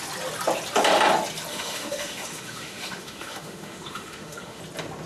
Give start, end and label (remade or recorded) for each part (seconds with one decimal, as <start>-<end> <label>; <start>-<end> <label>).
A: 0.0-1.5 recorded; 1.5-4.6 remade; 4.6-5.1 recorded